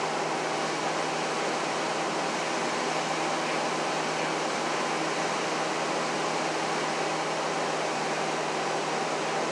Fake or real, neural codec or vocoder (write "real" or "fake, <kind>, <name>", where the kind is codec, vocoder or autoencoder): real